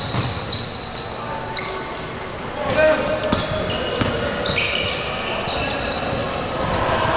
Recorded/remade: recorded